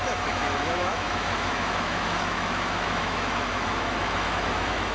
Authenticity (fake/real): fake